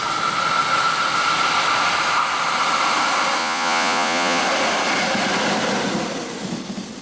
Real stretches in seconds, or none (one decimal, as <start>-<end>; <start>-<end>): 0.0-3.4; 4.4-7.0